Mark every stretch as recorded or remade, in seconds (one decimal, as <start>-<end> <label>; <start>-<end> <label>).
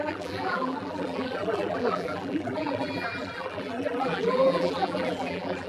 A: 0.0-5.7 remade